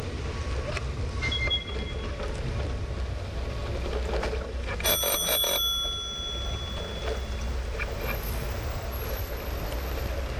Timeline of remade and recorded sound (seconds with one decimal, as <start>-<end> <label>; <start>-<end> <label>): 0.0-10.4 recorded